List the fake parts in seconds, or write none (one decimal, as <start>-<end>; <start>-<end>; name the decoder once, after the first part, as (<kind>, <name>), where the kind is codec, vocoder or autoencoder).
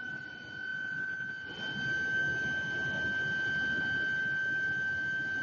none